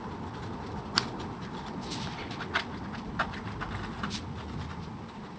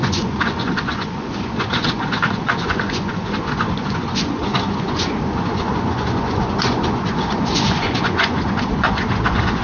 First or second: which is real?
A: first